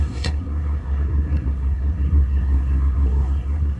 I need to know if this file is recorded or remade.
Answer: remade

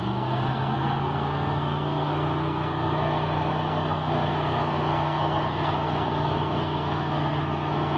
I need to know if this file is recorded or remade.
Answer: remade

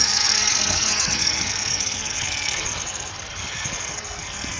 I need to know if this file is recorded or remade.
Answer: remade